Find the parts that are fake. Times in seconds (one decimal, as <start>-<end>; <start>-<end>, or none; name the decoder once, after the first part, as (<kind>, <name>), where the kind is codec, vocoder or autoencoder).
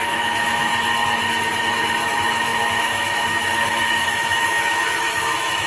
0.0-0.7 (autoencoder, DAC-VAE); 1.6-5.7